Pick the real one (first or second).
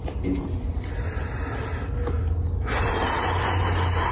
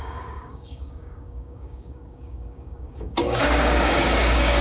first